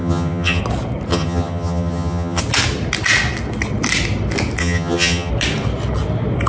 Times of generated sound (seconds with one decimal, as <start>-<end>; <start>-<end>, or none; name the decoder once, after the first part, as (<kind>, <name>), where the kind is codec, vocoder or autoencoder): 0.0-0.6 (vocoder, HiFi-GAN); 1.1-2.4; 4.6-5.3